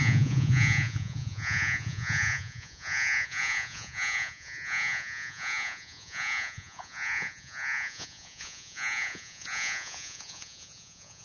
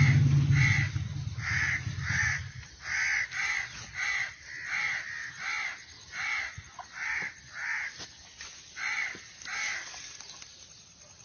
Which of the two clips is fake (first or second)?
first